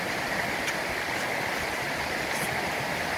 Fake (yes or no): no